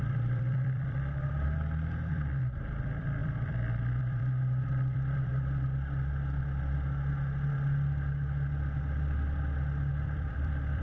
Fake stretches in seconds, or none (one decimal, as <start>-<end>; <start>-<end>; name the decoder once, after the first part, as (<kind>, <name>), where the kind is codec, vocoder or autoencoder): 0.0-5.3 (vocoder, BigVGAN v2); 9.9-10.8